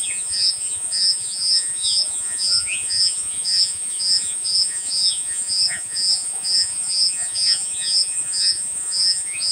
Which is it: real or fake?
fake